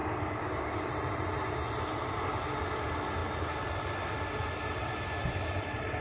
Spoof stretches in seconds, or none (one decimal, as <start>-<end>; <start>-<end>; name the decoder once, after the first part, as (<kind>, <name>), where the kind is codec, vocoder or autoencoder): 0.0-0.9 (codec, DAC)